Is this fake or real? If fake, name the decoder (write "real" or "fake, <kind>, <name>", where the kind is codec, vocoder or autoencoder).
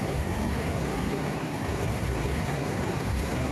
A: fake, codec, SNAC